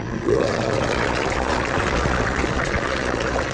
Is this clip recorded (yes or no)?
no